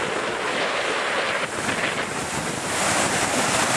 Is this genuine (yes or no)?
yes